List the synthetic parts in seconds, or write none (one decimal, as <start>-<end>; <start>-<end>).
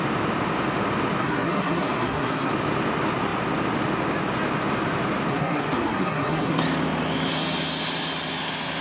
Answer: 1.2-2.5; 5.3-6.6